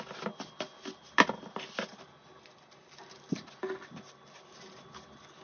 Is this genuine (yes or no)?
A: yes